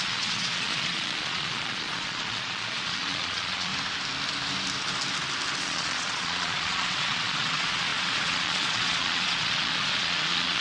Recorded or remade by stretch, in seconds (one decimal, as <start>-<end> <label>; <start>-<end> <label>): 0.0-3.7 remade; 3.7-5.6 recorded; 5.6-10.6 remade

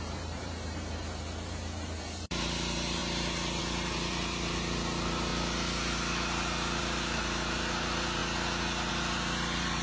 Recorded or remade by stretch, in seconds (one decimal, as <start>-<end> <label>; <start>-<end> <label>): 0.0-3.0 remade; 3.0-3.6 recorded; 3.6-5.3 remade; 5.3-6.8 recorded; 6.8-8.2 remade; 8.2-8.9 recorded; 8.9-9.8 remade

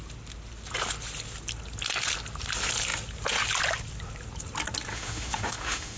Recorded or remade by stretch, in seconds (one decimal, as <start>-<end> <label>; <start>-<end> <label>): 0.0-4.9 recorded; 4.9-6.0 remade